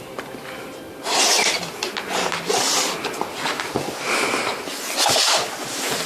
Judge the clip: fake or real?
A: real